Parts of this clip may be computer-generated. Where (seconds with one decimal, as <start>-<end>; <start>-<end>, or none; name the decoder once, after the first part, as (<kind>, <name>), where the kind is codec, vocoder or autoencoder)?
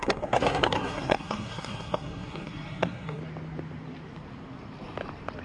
0.0-3.2 (codec, SNAC)